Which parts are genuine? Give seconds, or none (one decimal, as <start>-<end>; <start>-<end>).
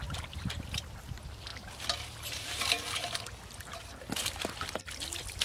0.0-5.4